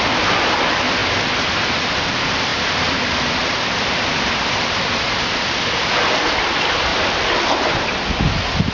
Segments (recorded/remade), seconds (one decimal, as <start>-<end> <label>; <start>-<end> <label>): 0.0-2.5 recorded; 2.5-5.6 remade; 5.6-8.7 recorded